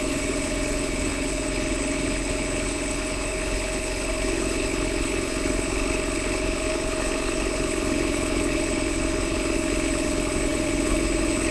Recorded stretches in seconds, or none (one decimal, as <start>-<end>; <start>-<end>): none